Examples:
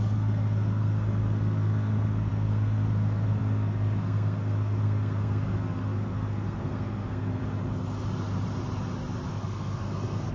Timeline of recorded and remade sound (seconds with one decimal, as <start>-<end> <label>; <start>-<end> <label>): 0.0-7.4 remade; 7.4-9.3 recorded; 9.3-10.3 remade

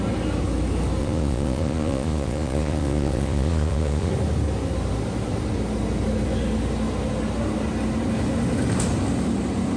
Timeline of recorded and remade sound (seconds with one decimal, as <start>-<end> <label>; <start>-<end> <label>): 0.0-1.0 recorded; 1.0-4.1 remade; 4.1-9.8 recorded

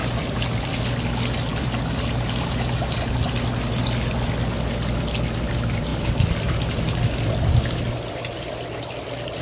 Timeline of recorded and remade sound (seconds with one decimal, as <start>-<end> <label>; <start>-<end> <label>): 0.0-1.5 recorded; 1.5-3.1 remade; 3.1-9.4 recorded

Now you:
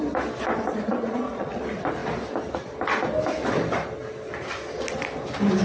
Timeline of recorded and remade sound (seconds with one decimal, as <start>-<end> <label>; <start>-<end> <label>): 0.0-0.9 recorded; 0.9-1.6 remade; 1.6-5.6 recorded

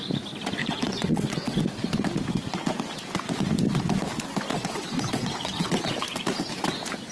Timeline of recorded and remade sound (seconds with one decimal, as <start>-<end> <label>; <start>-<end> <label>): 0.0-0.6 recorded; 0.6-1.6 remade; 1.6-4.5 recorded; 4.5-5.8 remade; 5.8-7.1 recorded